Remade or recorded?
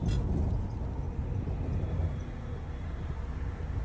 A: recorded